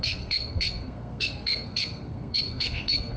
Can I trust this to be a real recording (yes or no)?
no